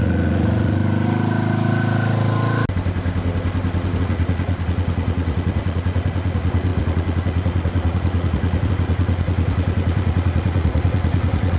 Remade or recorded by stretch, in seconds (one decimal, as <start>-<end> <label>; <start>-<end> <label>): 0.0-0.8 remade; 0.8-4.0 recorded; 4.0-11.6 remade